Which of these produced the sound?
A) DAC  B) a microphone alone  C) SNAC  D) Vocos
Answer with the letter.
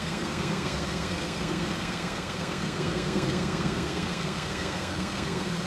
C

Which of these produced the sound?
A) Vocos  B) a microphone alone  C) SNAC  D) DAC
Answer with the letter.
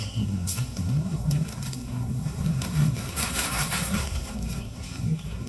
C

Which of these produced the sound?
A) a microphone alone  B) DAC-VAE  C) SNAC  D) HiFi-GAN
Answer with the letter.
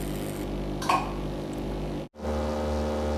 A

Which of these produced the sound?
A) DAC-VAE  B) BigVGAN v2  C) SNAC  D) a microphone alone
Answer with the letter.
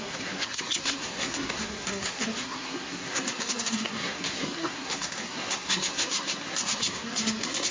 C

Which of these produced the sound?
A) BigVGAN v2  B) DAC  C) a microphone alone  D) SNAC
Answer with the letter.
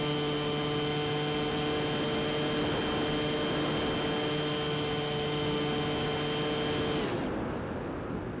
C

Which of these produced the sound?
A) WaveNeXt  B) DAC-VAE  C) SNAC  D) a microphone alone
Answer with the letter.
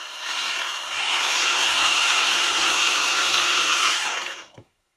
C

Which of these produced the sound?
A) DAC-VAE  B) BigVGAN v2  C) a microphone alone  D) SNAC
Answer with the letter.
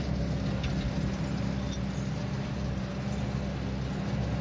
C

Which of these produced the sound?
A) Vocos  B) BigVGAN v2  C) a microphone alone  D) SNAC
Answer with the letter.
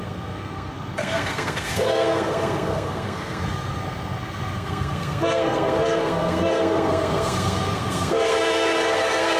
D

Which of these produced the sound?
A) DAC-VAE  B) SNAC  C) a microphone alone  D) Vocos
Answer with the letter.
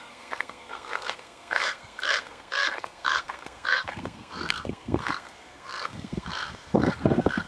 B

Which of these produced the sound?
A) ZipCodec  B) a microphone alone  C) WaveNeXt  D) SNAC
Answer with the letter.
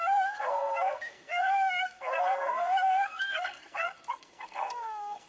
D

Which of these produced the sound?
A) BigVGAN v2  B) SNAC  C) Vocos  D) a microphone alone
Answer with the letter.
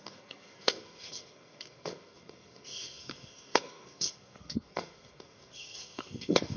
B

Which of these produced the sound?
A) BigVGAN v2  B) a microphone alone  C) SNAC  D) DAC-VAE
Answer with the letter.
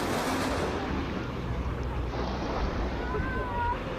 B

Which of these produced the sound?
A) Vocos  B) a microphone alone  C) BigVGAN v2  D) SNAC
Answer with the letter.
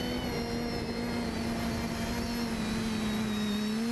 B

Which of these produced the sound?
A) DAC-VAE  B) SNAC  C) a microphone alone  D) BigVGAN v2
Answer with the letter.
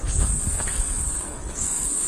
B